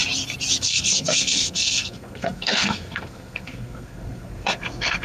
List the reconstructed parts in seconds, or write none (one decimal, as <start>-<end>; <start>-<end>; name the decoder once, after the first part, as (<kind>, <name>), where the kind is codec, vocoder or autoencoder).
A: 0.6-5.0 (codec, SNAC)